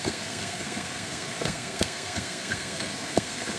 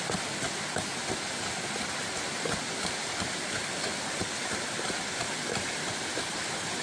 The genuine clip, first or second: second